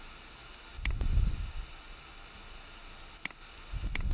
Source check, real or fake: real